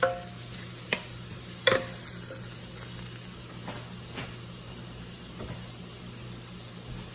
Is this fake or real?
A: real